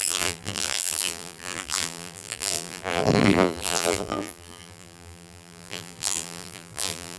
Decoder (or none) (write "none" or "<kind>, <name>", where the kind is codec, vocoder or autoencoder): vocoder, BigVGAN v2